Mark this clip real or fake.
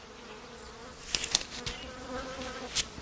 real